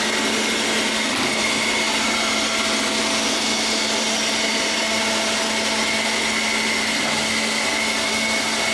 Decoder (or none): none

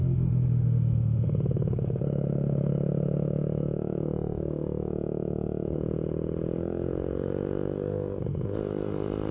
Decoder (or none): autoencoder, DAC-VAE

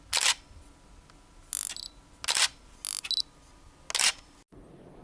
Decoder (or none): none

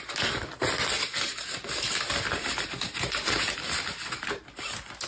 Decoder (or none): none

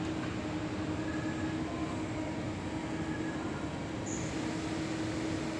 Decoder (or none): none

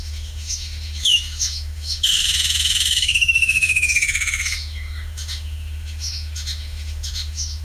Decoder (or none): autoencoder, DAC-VAE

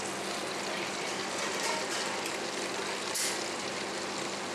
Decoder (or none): none